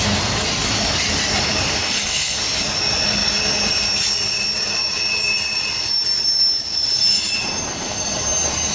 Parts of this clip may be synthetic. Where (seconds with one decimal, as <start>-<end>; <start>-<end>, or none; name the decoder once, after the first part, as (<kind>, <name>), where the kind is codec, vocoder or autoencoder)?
1.8-2.4 (codec, SNAC)